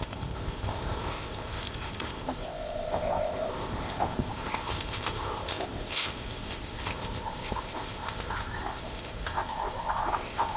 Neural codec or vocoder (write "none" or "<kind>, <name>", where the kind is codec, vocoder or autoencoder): codec, ZipCodec